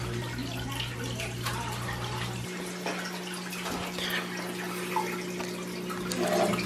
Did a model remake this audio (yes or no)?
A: no